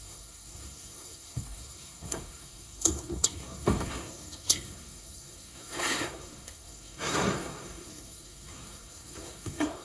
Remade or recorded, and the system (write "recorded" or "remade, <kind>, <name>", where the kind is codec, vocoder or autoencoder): remade, codec, SNAC